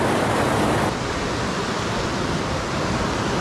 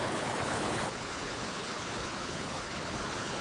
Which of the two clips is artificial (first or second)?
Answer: second